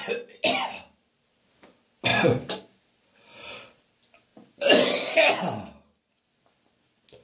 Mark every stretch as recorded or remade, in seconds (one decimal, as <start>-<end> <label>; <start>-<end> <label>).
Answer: 0.0-1.5 remade; 1.5-2.1 recorded; 2.1-3.9 remade; 3.9-7.2 recorded